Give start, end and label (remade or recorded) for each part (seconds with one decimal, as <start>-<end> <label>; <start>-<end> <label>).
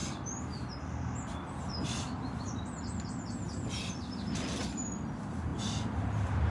0.0-6.5 recorded